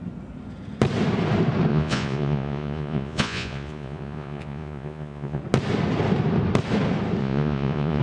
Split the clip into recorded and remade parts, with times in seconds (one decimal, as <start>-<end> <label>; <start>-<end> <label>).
0.0-1.7 recorded; 1.7-5.4 remade; 5.4-7.2 recorded; 7.2-8.0 remade